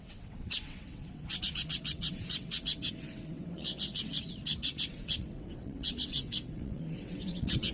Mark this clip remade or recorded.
remade